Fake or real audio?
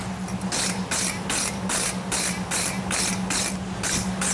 real